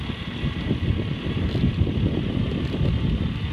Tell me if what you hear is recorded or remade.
recorded